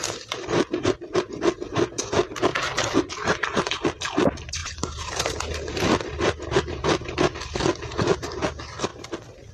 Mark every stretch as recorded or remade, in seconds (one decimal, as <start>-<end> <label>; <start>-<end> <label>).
0.0-4.6 recorded; 4.6-5.1 remade; 5.1-9.5 recorded